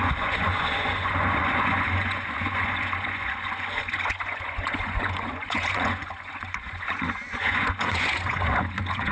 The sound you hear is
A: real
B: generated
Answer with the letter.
B